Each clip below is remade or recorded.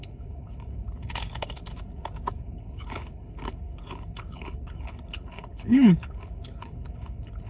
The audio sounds remade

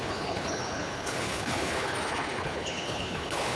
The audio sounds remade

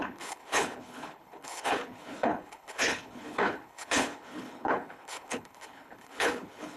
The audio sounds remade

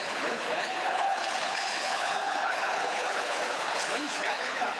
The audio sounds remade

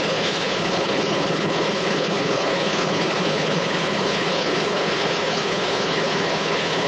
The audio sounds remade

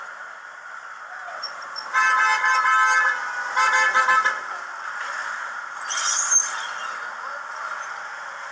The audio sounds recorded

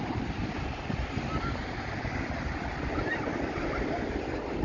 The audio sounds recorded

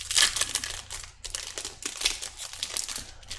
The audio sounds recorded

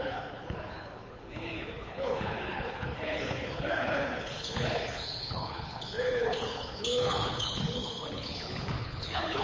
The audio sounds remade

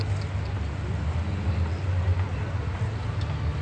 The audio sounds recorded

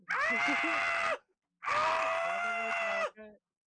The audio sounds recorded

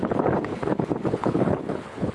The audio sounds remade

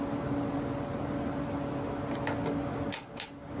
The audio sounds recorded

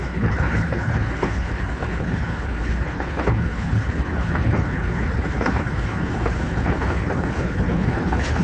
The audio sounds remade